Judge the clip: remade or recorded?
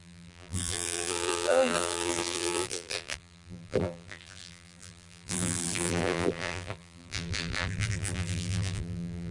remade